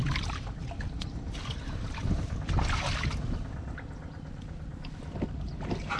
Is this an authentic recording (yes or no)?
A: yes